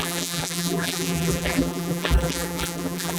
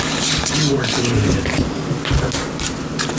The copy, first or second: first